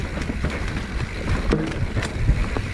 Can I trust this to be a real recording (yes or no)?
yes